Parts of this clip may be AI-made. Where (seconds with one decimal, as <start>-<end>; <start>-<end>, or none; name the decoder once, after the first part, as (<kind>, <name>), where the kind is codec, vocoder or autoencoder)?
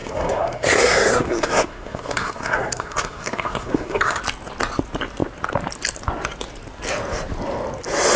0.0-4.2 (codec, SNAC)